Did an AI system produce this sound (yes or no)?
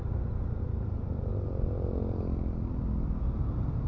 no